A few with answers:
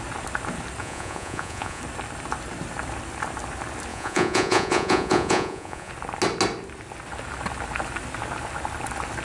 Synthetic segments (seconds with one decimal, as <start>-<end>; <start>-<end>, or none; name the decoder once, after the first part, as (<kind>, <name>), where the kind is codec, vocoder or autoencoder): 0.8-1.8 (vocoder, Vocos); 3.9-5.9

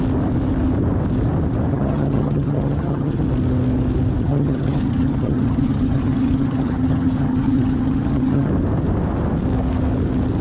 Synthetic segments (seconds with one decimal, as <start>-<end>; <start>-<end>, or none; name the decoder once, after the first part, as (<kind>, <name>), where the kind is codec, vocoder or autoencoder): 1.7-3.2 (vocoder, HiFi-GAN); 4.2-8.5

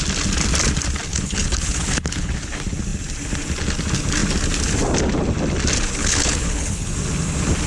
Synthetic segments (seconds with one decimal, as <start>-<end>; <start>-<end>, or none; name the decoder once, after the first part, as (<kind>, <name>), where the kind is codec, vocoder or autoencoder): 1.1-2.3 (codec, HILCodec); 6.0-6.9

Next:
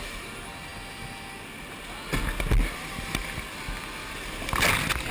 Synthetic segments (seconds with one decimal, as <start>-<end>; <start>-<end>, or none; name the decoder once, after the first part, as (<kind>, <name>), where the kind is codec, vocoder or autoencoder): none